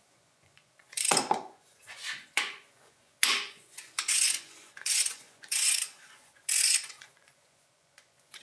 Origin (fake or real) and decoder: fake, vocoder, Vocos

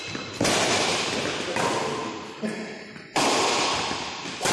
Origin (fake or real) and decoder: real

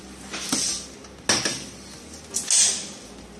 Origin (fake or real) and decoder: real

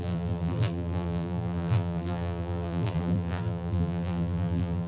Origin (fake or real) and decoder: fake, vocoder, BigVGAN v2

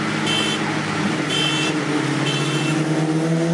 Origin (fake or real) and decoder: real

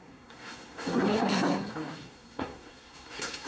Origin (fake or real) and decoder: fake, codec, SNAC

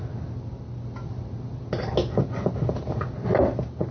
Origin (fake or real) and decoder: real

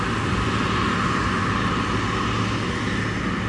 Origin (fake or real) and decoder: real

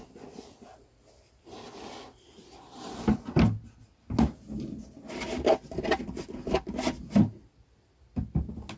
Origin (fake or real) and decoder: real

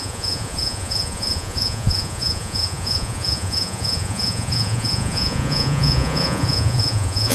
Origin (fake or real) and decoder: fake, vocoder, Vocos